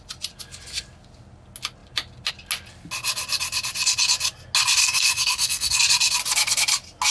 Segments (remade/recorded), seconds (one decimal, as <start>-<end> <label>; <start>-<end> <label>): 0.0-4.8 recorded; 4.8-5.8 remade; 5.8-7.1 recorded